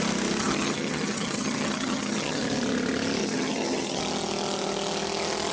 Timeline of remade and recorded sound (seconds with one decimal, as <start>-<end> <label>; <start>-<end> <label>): 0.0-0.4 recorded; 0.4-2.4 remade; 2.4-3.2 recorded; 3.2-4.0 remade; 4.0-5.5 recorded

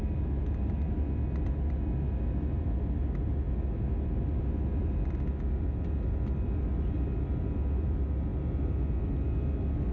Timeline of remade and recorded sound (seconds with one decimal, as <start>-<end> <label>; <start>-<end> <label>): 0.0-9.9 recorded